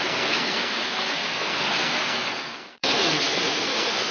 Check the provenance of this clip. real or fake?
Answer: fake